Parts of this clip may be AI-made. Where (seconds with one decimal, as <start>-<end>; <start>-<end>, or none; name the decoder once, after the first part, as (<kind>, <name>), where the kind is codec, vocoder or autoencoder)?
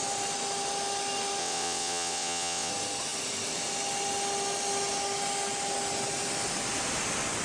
1.4-2.7 (vocoder, WaveNeXt)